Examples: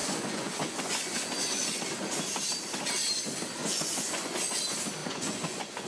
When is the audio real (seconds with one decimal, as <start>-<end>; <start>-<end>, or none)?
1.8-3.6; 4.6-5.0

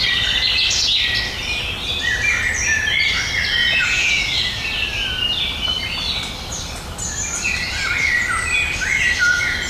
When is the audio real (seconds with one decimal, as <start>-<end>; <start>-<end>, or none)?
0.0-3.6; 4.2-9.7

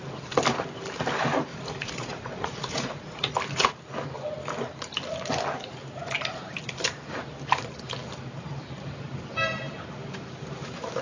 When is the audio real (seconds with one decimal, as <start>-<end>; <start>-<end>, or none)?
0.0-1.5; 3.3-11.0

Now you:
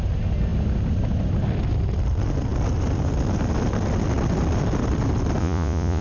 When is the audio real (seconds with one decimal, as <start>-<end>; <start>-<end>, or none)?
0.0-5.4

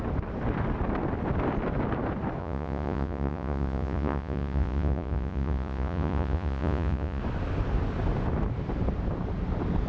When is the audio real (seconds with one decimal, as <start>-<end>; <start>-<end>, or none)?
0.0-2.4; 7.2-9.9

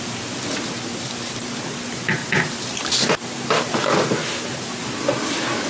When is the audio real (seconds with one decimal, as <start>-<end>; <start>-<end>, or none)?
0.0-5.7